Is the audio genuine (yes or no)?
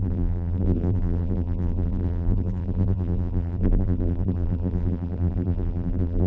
no